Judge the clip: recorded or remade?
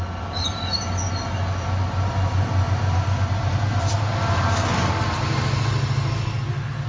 recorded